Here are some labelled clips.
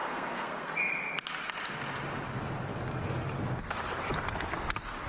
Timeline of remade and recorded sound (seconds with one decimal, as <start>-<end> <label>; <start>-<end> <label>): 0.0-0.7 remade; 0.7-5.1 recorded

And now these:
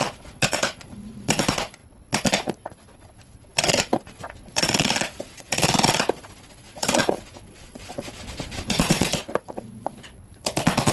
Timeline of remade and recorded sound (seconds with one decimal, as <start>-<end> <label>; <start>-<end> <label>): 0.0-10.9 remade

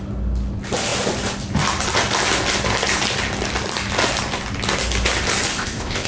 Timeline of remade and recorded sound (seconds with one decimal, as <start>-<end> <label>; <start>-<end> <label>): 0.0-5.5 recorded; 5.5-6.1 remade

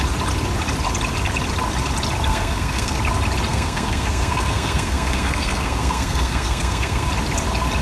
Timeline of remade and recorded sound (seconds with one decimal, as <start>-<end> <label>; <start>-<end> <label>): 0.0-2.3 recorded; 2.3-3.0 remade; 3.0-3.5 recorded; 3.5-7.1 remade; 7.1-7.8 recorded

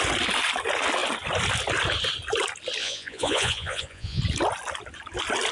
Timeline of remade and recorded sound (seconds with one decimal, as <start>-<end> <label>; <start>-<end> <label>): 0.0-2.8 recorded; 2.8-4.2 remade; 4.2-5.5 recorded

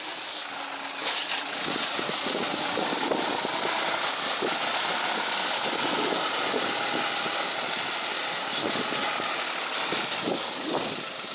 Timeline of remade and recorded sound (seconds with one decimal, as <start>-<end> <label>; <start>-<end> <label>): 0.0-1.0 recorded; 1.0-2.7 remade; 2.7-11.3 recorded